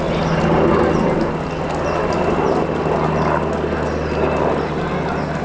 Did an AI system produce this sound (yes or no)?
no